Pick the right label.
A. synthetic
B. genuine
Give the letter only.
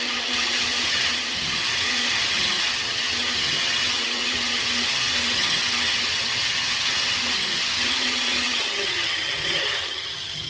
A